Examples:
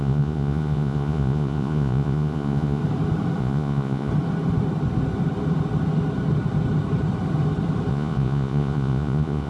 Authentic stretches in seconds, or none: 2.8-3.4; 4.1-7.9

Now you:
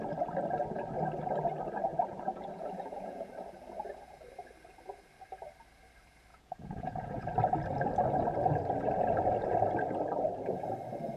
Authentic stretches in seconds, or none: 0.0-1.9; 3.3-6.3; 7.2-11.2